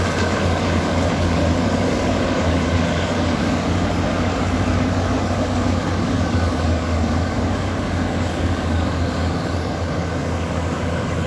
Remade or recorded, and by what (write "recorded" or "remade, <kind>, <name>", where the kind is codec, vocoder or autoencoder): remade, codec, DAC